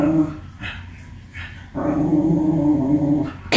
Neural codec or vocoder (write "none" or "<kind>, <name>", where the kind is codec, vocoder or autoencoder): none